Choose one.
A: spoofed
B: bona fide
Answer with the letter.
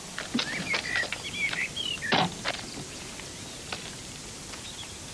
A